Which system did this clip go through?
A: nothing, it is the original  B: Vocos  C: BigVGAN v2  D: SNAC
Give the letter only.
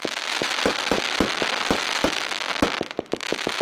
A